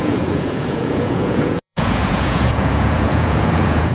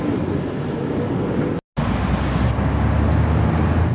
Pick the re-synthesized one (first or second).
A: first